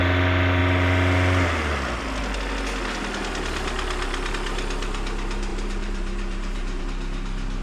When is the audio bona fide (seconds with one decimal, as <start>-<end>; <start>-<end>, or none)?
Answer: 0.0-5.5; 6.8-7.6